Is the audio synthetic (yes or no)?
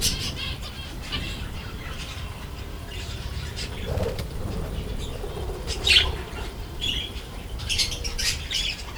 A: yes